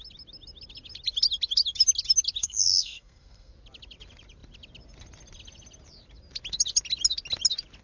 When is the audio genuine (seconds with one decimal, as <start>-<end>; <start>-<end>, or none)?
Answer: 0.0-2.4; 3.5-7.8